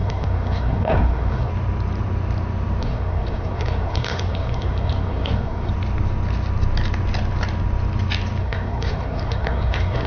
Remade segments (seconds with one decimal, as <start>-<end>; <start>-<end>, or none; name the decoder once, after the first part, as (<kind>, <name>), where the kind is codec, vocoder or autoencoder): 0.0-1.5 (codec, SNAC); 2.8-5.7; 8.4-10.1